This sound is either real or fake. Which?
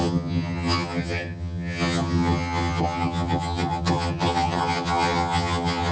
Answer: fake